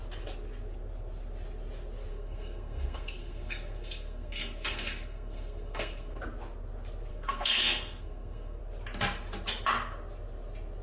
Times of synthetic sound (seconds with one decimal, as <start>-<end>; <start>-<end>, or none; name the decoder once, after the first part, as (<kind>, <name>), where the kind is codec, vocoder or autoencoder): 2.1-6.2 (codec, SNAC); 7.1-8.6